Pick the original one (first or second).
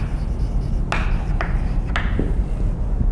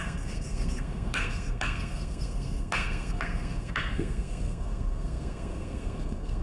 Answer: first